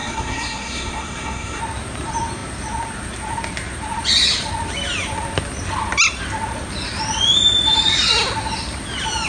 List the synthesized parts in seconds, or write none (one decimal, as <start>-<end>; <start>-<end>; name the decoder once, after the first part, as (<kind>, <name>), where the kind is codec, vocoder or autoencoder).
0.0-1.6 (codec, SNAC)